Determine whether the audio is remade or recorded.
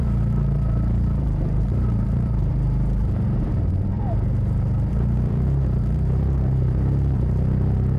remade